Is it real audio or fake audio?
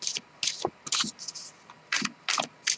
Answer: real